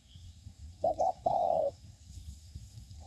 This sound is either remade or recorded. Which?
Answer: remade